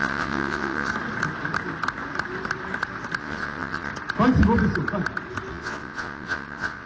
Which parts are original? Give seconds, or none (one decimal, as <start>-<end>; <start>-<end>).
0.9-3.2; 3.9-5.5